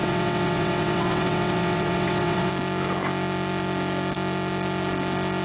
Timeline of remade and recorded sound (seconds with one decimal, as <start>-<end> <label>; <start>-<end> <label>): 0.0-2.5 remade; 2.5-5.4 recorded